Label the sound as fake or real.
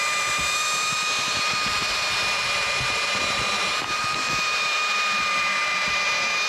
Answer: fake